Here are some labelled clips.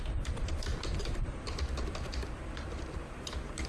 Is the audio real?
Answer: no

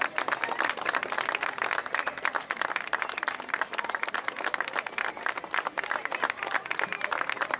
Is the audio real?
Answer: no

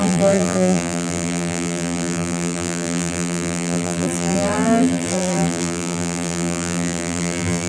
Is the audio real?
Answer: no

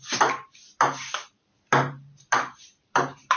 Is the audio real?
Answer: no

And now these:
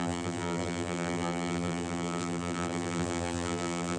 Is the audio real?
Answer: no